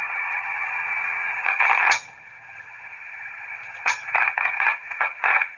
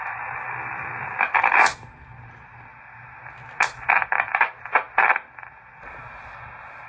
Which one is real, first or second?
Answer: second